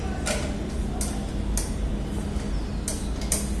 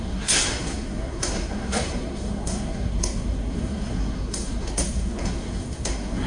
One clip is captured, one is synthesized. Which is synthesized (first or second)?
second